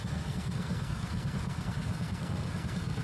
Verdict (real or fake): fake